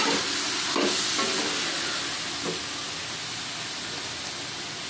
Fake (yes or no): no